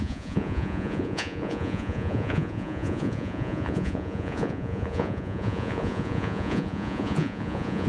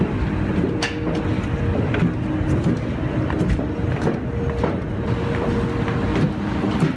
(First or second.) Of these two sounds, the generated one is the first